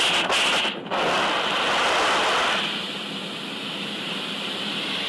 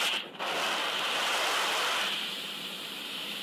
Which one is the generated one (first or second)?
second